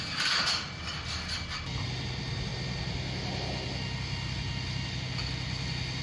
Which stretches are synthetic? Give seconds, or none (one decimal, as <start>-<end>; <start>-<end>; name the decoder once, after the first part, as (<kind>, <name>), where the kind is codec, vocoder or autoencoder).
none